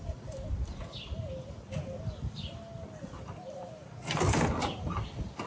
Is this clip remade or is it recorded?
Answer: recorded